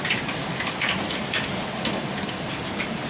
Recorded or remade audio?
recorded